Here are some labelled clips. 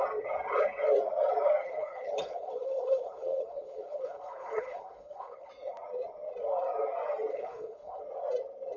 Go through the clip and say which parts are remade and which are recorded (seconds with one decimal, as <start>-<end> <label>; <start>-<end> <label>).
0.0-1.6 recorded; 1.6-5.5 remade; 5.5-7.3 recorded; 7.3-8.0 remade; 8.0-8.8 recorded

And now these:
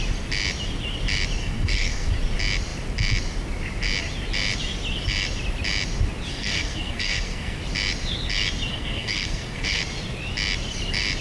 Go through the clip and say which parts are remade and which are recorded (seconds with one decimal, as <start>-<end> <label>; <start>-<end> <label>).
0.0-1.4 recorded; 1.4-2.1 remade; 2.1-6.3 recorded; 6.3-7.6 remade; 7.6-8.7 recorded; 8.7-9.8 remade; 9.8-11.2 recorded

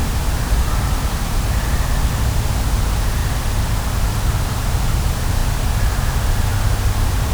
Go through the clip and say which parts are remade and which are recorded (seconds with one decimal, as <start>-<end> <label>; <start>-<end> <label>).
0.0-2.6 remade; 2.6-7.3 recorded